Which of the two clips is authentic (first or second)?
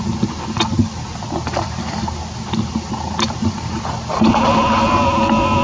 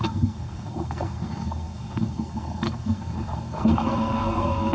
first